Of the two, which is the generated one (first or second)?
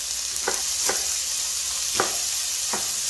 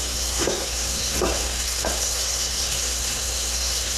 second